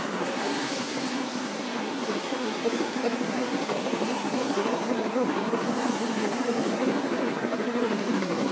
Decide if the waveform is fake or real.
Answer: fake